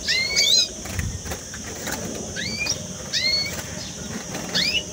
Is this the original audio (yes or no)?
yes